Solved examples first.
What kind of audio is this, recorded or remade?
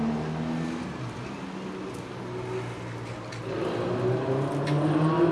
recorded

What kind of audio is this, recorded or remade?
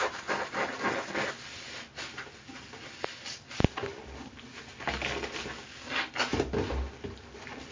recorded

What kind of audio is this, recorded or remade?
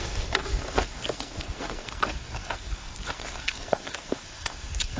remade